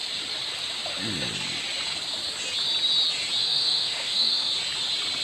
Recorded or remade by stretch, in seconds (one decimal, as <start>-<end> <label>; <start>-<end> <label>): 0.0-3.4 recorded; 3.4-4.5 remade; 4.5-5.2 recorded